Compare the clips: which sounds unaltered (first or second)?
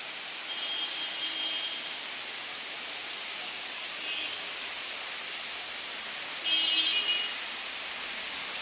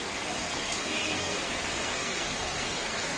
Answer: first